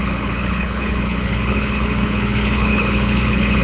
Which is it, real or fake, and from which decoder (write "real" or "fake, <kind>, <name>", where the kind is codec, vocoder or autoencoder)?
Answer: fake, codec, HILCodec